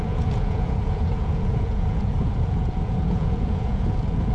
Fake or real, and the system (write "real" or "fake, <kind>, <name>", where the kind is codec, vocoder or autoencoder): fake, vocoder, Vocos